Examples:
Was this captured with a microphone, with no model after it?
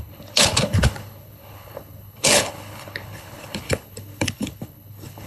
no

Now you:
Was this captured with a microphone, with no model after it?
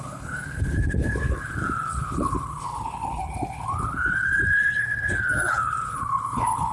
no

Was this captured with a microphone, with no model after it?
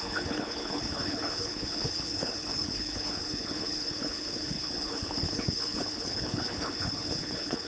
no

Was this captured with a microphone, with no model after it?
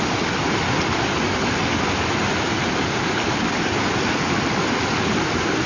yes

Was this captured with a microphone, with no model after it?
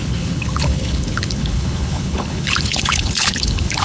no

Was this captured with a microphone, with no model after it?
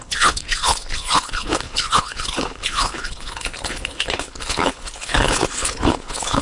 no